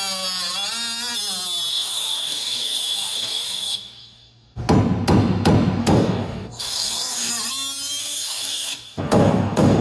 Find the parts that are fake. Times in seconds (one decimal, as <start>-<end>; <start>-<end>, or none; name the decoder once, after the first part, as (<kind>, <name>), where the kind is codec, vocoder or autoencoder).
1.7-4.6 (codec, DAC); 5.8-7.3; 8.0-9.8